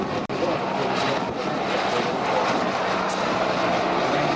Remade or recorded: recorded